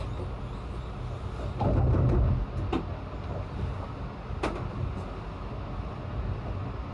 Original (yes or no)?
yes